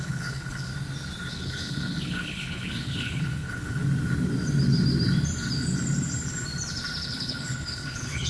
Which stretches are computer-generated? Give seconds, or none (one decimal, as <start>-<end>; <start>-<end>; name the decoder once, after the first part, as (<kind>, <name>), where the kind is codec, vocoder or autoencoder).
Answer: 0.0-0.7 (codec, HILCodec); 1.3-3.8; 7.0-8.3